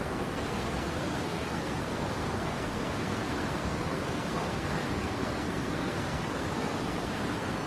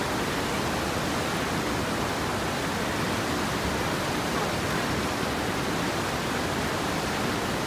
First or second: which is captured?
second